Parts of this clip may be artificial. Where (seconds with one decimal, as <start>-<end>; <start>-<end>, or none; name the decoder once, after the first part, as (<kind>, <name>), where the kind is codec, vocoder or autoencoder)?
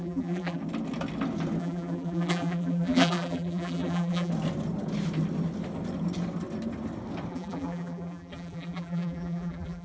0.0-0.6 (vocoder, BigVGAN v2); 1.6-4.3; 7.3-9.8